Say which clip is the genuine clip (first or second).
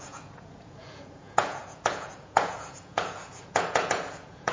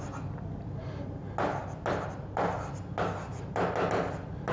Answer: second